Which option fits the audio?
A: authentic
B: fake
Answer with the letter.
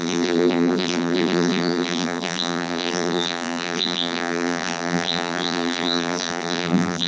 B